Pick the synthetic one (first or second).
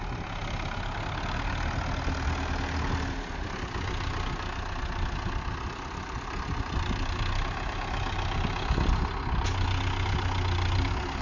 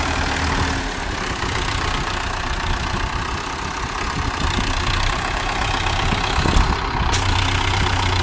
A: second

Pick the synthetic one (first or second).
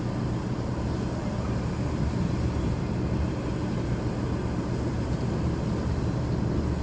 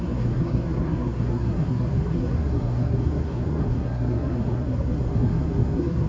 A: second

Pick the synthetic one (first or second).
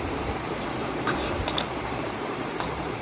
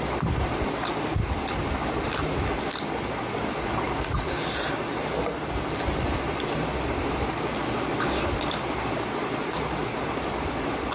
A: first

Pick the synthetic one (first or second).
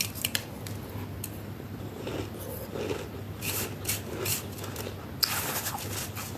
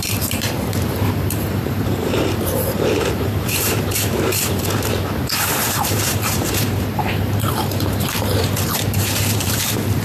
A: second